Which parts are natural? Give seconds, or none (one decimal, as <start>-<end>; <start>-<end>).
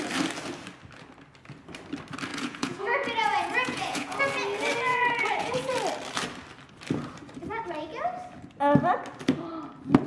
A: 0.0-2.3; 4.2-4.9; 5.7-10.1